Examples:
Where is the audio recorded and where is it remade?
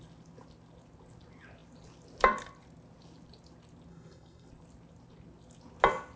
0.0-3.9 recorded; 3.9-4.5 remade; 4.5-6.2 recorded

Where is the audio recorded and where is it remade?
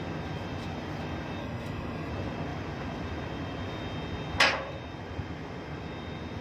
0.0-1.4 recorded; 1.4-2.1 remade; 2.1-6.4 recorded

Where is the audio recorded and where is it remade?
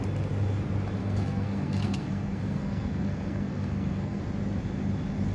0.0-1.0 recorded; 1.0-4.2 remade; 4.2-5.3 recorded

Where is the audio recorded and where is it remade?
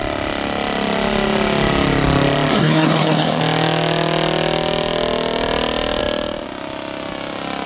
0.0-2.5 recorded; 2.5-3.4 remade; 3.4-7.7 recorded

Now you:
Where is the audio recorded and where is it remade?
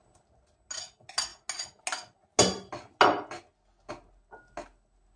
0.0-5.2 recorded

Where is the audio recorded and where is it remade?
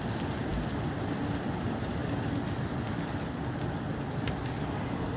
0.0-5.2 recorded